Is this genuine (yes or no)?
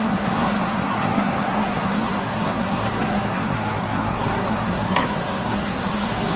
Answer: no